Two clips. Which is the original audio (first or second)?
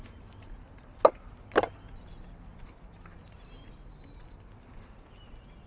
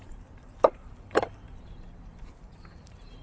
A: first